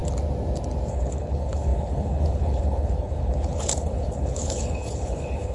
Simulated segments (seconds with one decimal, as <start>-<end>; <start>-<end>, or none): 0.9-5.5